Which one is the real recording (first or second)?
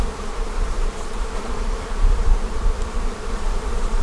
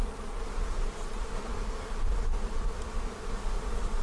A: second